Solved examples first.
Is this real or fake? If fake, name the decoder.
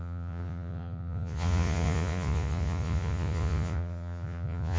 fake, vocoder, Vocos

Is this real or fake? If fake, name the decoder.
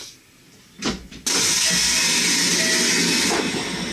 real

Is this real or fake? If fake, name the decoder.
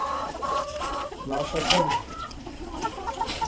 fake, vocoder, Vocos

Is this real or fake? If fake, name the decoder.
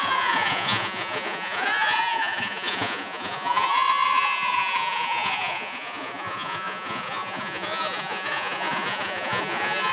fake, vocoder, Vocos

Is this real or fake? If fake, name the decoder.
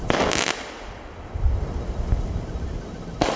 real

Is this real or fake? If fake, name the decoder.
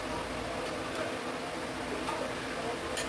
real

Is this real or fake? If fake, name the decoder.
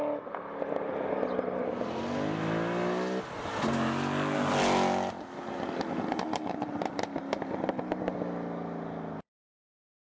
real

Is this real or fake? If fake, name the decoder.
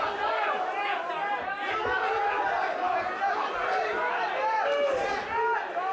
real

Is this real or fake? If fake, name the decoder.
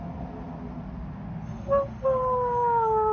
real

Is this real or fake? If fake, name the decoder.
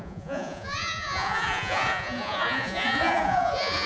fake, vocoder, Vocos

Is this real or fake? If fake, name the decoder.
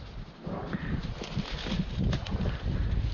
real